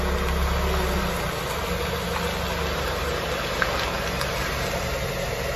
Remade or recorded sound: recorded